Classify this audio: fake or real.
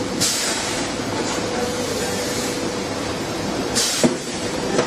fake